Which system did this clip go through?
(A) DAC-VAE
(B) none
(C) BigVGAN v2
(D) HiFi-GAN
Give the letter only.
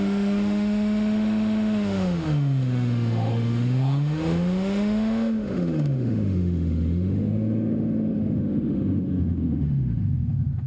A